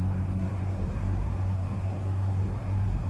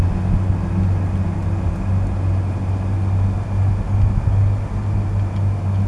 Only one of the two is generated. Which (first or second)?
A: first